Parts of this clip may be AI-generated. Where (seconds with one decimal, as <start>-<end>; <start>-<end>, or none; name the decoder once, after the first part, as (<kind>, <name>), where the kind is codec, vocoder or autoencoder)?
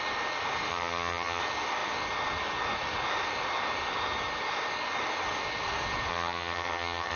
0.7-1.4 (vocoder, HiFi-GAN); 6.1-7.2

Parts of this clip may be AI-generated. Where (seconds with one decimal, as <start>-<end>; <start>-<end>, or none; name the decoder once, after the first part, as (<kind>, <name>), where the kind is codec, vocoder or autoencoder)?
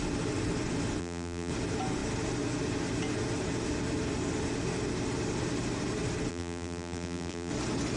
1.0-1.5 (vocoder, BigVGAN v2); 6.3-7.5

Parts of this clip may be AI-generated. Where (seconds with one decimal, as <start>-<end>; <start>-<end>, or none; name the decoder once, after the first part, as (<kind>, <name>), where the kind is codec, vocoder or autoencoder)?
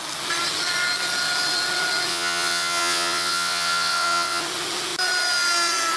2.1-4.4 (vocoder, WaveNeXt)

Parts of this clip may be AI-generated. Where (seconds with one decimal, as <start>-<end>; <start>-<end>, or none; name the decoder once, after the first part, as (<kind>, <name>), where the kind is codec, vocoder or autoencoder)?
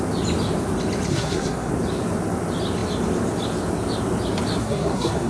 1.1-1.7 (codec, SNAC); 4.6-5.3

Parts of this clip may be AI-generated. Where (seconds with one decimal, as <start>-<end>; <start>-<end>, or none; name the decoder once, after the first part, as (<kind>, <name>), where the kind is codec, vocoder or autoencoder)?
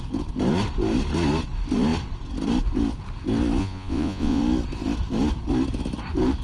3.6-4.4 (vocoder, Vocos)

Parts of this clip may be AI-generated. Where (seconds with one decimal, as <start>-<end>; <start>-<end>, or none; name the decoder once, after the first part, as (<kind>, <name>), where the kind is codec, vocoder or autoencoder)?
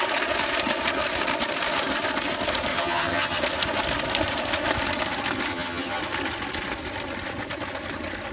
2.7-3.4 (vocoder, HiFi-GAN); 5.5-6.0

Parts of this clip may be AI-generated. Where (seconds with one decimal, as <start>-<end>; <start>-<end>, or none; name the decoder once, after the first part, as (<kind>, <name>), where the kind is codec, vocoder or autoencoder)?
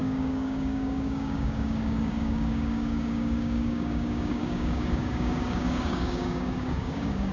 0.0-7.3 (codec, DAC)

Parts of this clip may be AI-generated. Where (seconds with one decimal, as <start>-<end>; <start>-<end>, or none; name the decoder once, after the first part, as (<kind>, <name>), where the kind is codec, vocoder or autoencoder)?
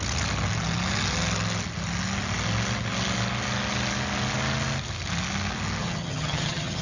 5.8-6.8 (vocoder, HiFi-GAN)